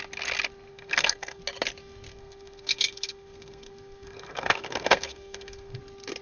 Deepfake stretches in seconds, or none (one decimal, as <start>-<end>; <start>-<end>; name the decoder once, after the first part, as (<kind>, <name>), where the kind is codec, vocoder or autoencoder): 0.7-1.4 (codec, SNAC); 2.1-5.8

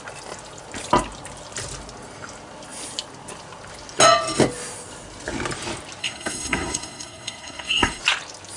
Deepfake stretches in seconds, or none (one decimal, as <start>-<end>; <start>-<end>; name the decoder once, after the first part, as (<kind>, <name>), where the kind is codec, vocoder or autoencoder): 6.0-8.0 (codec, SNAC)